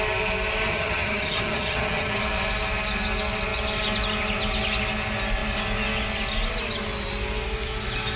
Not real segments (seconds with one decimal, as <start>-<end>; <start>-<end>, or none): 0.7-2.2